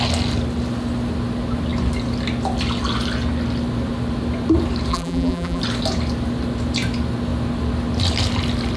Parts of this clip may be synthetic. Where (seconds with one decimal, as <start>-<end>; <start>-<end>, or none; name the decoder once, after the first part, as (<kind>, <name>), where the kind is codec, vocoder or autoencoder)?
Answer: 4.9-5.6 (vocoder, BigVGAN v2)